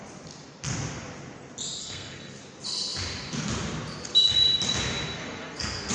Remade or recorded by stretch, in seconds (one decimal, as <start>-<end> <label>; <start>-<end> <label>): 0.0-1.8 recorded; 1.8-2.4 remade; 2.4-5.2 recorded; 5.2-5.9 remade